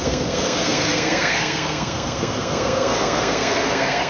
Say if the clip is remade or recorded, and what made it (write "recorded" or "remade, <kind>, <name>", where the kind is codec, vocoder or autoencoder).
remade, codec, SNAC